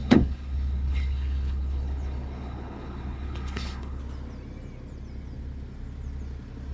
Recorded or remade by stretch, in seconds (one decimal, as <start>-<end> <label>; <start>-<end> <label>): 0.0-4.0 remade; 4.0-6.7 recorded